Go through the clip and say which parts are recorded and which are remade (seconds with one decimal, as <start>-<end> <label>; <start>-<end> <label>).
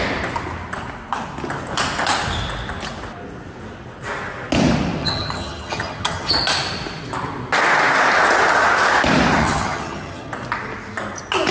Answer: 0.0-5.0 recorded; 5.0-6.3 remade; 6.3-9.4 recorded; 9.4-10.3 remade; 10.3-11.5 recorded